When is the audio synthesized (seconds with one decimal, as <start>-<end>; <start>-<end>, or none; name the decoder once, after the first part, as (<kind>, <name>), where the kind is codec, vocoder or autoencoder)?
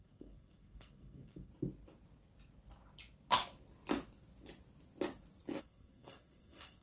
0.0-1.5 (codec, SNAC); 5.6-6.8